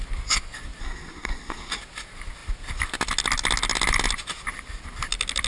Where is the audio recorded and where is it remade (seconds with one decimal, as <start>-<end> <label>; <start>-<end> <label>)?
0.0-0.8 recorded; 0.8-1.8 remade; 1.8-5.5 recorded